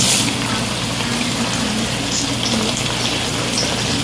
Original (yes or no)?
yes